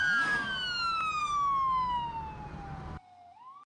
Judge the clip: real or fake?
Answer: real